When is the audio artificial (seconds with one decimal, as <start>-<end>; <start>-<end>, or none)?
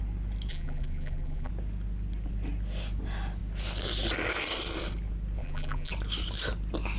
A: 0.5-1.5; 5.4-5.9